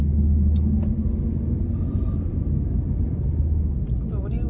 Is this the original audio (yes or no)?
yes